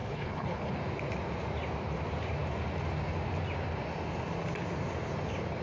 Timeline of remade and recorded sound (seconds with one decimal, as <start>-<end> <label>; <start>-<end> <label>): 0.0-0.7 remade; 0.7-5.6 recorded